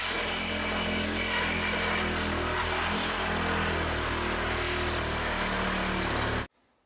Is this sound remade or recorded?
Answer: recorded